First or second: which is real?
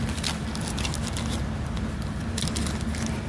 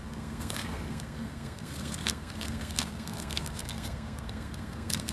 first